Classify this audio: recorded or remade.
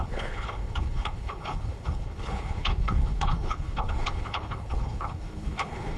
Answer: remade